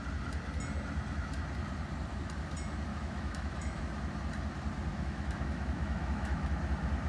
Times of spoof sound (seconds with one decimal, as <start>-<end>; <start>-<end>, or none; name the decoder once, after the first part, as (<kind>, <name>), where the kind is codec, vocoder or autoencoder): 2.9-3.8 (autoencoder, DAC-VAE); 4.9-6.6